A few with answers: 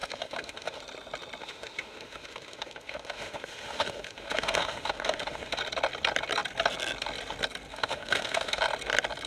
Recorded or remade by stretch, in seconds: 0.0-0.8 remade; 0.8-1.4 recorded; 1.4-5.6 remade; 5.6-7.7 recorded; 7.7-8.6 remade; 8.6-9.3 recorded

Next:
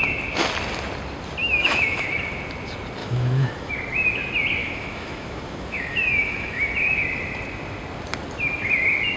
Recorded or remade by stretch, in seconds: 0.0-1.4 recorded; 1.4-2.1 remade; 2.1-3.0 recorded; 3.0-3.7 remade; 3.7-4.6 recorded; 4.6-6.7 remade; 6.7-9.2 recorded

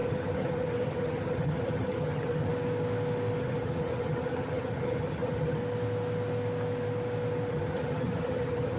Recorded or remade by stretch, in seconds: 0.0-2.5 remade; 2.5-3.4 recorded; 3.4-5.6 remade; 5.6-7.5 recorded; 7.5-8.8 remade

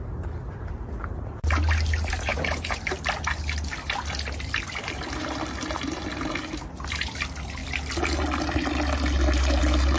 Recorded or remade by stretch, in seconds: 0.0-2.3 recorded; 2.3-2.8 remade; 2.8-10.0 recorded